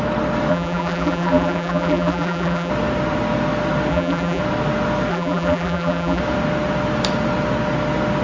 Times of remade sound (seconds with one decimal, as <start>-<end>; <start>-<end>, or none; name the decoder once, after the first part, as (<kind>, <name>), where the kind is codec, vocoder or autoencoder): 0.5-2.7 (vocoder, BigVGAN v2); 3.9-4.4; 5.1-6.2